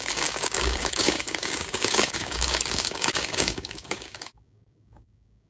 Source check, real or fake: fake